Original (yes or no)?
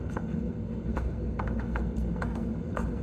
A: no